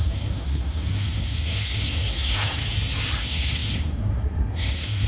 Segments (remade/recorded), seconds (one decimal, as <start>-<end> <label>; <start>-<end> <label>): 0.0-2.6 remade; 2.6-3.2 recorded; 3.2-5.1 remade